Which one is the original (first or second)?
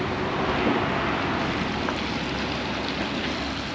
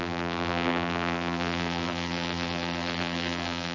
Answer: first